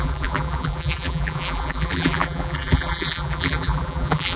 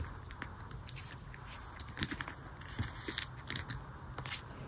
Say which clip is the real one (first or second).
second